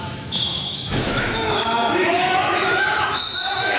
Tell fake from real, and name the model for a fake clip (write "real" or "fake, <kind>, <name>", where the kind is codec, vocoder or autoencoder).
fake, autoencoder, DAC-VAE